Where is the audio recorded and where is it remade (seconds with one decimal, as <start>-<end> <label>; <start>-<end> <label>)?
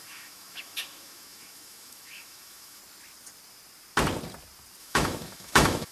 0.0-2.8 remade; 2.8-4.8 recorded; 4.8-5.9 remade